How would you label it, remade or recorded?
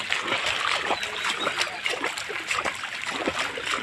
recorded